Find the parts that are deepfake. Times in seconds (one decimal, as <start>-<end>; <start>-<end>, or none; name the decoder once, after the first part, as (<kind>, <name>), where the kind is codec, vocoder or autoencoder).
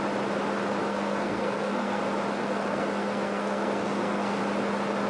0.8-2.0 (codec, SNAC); 2.4-4.4